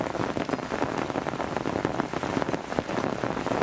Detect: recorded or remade recorded